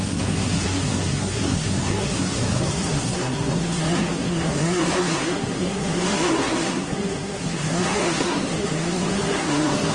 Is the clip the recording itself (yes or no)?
no